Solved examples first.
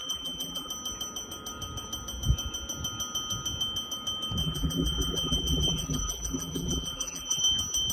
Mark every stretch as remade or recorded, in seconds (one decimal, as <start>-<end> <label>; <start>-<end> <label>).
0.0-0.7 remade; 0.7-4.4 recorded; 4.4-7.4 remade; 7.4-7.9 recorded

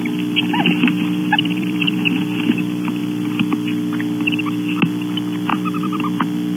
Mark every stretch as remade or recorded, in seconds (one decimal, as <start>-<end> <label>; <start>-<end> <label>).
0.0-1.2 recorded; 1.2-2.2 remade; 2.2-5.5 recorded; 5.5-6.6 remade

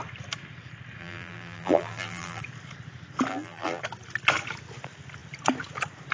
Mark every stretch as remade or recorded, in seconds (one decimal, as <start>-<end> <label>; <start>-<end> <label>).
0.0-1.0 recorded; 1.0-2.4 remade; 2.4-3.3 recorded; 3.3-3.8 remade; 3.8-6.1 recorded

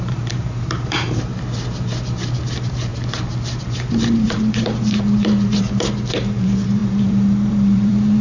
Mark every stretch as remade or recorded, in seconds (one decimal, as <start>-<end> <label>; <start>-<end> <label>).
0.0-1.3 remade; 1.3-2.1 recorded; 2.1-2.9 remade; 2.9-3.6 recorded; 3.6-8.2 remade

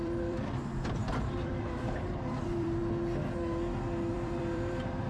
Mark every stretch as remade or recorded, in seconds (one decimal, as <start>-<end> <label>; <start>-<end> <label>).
0.0-2.8 remade; 2.8-4.1 recorded; 4.1-5.1 remade

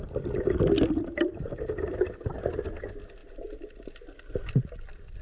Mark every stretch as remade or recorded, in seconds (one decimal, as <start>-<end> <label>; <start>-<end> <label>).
0.0-2.3 remade; 2.3-3.2 recorded; 3.2-3.8 remade; 3.8-5.2 recorded